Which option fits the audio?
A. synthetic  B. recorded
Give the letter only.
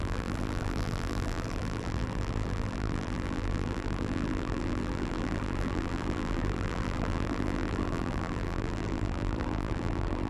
A